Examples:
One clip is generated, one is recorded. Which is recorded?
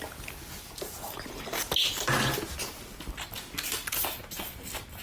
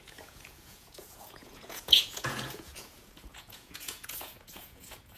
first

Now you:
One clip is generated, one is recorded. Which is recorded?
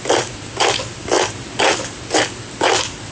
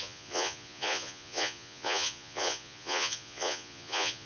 first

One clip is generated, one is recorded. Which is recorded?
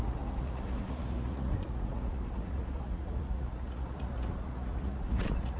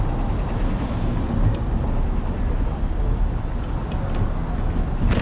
second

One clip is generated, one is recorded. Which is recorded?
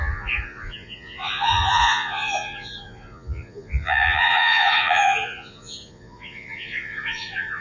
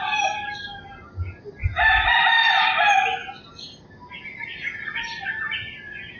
second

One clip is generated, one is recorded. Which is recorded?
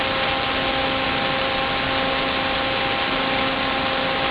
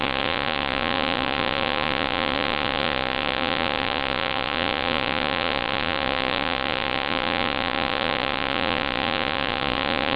first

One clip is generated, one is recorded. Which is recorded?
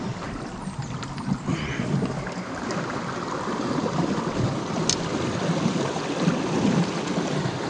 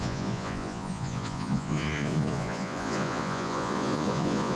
first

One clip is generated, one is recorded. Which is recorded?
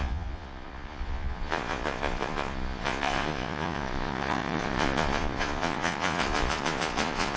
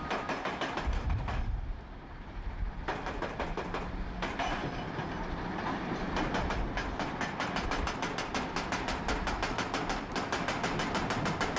second